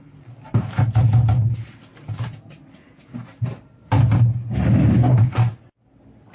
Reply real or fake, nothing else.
real